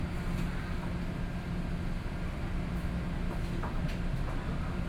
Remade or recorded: recorded